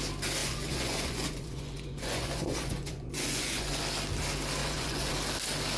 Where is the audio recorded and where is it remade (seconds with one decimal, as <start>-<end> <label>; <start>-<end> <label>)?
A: 0.0-0.4 recorded; 0.4-3.8 remade; 3.8-4.6 recorded; 4.6-5.1 remade; 5.1-5.8 recorded